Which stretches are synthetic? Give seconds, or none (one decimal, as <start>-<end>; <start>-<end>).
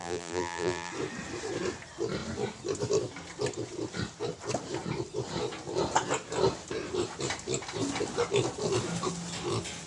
0.0-0.9